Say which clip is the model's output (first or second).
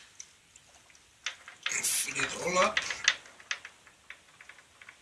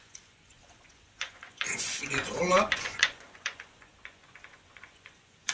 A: second